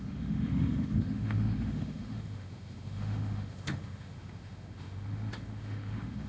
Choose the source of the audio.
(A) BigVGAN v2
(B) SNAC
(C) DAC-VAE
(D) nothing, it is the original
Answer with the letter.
C